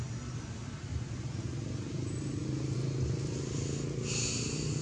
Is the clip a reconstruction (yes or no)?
no